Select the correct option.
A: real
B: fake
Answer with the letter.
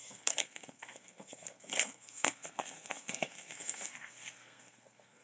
B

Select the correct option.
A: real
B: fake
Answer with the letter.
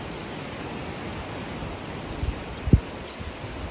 A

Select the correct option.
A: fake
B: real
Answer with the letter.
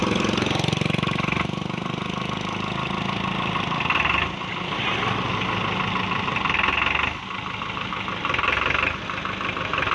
B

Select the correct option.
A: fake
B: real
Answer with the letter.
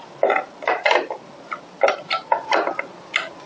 B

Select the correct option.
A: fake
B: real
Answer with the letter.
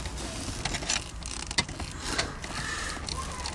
B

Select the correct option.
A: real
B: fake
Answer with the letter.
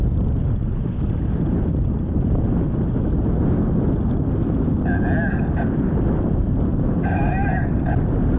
A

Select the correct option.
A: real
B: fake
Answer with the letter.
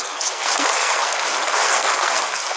B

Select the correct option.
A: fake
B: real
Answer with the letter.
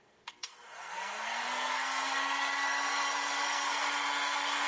A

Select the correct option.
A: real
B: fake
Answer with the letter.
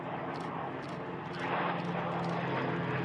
A